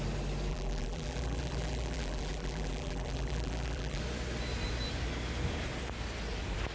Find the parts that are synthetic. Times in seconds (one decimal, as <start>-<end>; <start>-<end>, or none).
0.5-4.0